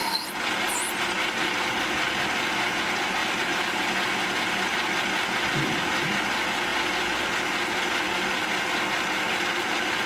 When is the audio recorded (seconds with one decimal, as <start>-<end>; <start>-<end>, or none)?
0.7-3.2; 4.7-10.1